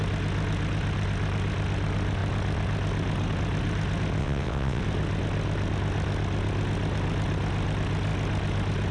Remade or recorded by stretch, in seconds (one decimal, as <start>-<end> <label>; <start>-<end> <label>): 0.0-4.2 recorded; 4.2-4.8 remade; 4.8-8.9 recorded